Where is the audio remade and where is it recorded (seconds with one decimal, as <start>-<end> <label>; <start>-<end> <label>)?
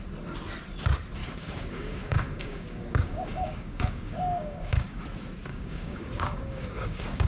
0.0-1.2 recorded; 1.2-5.0 remade; 5.0-5.5 recorded; 5.5-7.3 remade